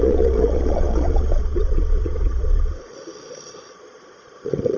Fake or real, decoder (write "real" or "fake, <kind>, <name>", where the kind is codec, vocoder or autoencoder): fake, vocoder, Vocos